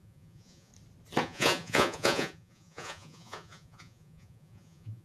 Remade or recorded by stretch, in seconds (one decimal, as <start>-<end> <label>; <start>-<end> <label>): 0.0-0.7 remade; 0.7-1.2 recorded; 1.2-5.0 remade